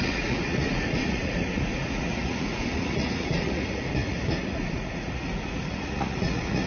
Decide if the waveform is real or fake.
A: fake